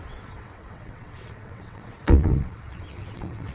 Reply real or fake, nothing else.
fake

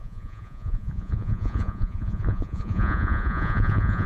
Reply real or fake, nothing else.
fake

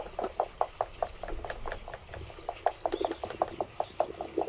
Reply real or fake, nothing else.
real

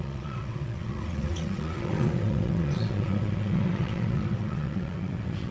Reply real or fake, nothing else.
fake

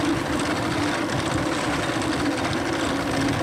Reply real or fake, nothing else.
real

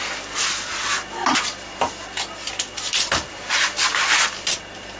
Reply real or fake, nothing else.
real